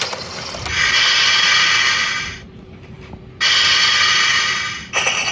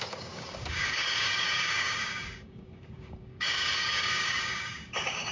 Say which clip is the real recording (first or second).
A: first